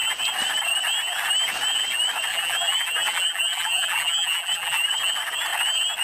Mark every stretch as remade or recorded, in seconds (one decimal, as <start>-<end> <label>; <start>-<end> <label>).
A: 0.0-2.3 recorded; 2.3-4.9 remade; 4.9-6.0 recorded

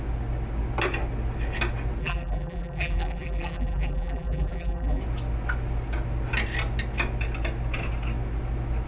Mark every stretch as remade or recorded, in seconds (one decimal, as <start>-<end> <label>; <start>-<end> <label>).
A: 0.0-2.0 recorded; 2.0-5.0 remade; 5.0-8.9 recorded